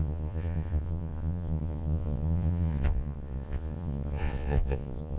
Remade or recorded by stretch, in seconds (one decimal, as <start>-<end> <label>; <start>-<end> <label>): 0.0-5.2 remade